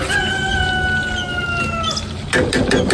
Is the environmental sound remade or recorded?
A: recorded